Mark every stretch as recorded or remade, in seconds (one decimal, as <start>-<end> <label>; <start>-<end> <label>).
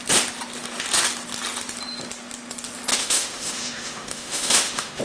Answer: 0.0-2.9 recorded; 2.9-5.0 remade